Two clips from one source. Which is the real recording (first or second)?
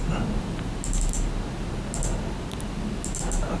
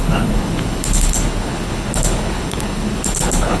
first